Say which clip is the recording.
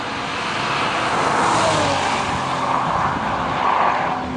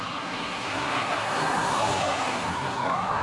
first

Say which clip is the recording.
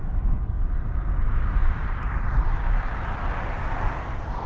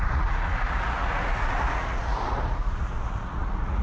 first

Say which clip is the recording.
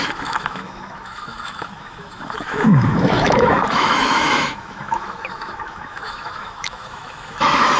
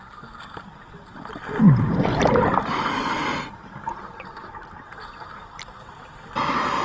second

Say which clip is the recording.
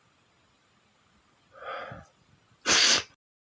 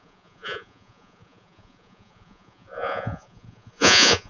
first